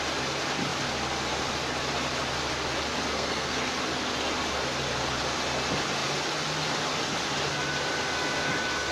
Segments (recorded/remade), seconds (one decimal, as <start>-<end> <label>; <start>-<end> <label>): 0.0-3.1 recorded; 3.1-3.7 remade; 3.7-8.9 recorded